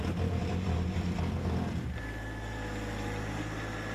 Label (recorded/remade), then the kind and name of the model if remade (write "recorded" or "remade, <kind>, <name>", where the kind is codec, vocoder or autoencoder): recorded